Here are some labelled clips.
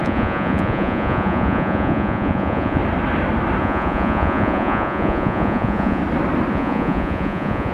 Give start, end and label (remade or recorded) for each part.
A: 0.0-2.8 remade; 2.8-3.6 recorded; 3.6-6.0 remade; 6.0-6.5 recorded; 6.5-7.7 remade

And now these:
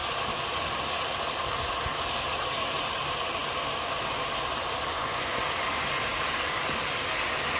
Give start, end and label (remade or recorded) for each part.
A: 0.0-4.9 recorded; 4.9-5.4 remade; 5.4-7.6 recorded

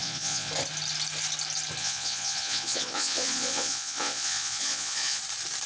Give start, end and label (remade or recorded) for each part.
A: 0.0-0.5 remade; 0.5-1.8 recorded; 1.8-5.2 remade; 5.2-5.7 recorded